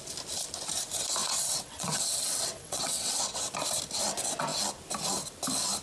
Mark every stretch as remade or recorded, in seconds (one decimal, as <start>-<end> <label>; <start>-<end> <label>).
0.0-1.2 recorded; 1.2-3.5 remade; 3.5-5.8 recorded